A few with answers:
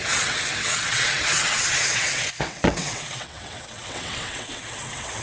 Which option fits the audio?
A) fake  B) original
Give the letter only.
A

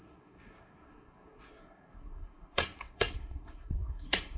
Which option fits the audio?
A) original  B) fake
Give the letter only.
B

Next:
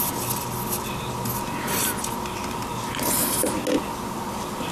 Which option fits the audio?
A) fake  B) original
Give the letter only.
B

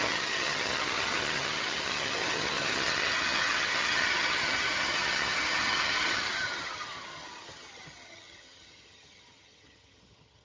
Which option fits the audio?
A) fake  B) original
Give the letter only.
A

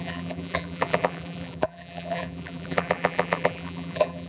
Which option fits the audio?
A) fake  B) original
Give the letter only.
A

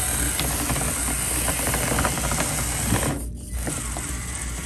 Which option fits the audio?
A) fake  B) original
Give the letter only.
B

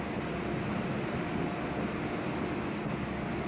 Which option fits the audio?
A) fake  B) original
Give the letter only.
B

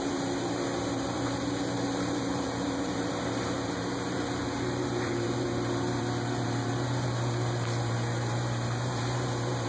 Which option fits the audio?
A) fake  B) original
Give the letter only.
A